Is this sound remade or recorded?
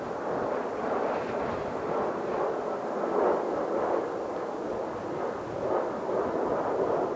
recorded